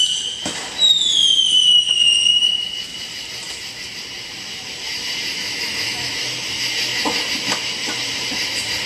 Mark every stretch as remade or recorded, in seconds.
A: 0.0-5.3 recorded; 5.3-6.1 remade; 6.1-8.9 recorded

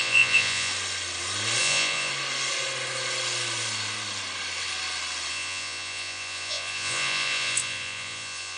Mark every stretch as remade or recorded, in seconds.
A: 0.0-0.7 remade; 0.7-1.6 recorded; 1.6-2.1 remade; 2.1-5.3 recorded; 5.3-8.6 remade

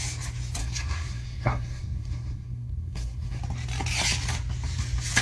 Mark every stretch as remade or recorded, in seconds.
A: 0.0-0.6 recorded; 0.6-3.4 remade; 3.4-5.2 recorded